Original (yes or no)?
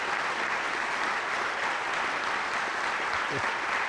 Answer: yes